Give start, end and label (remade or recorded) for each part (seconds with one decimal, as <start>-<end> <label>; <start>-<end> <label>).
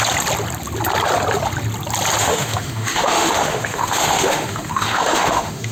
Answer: 0.0-2.2 recorded; 2.2-5.7 remade